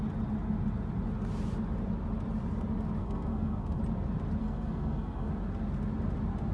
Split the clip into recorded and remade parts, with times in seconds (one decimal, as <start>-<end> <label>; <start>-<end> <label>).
0.0-3.0 recorded; 3.0-3.8 remade; 3.8-4.4 recorded; 4.4-5.3 remade; 5.3-6.5 recorded